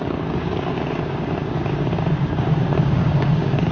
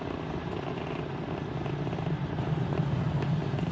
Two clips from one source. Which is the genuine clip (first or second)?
second